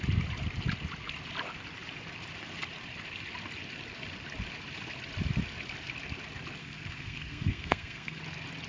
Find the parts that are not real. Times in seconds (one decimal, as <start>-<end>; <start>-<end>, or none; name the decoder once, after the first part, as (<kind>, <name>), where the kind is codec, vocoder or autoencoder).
6.6-8.2 (codec, SNAC)